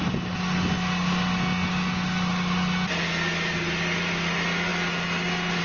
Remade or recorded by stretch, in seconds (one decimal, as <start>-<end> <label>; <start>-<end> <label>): 0.0-5.6 recorded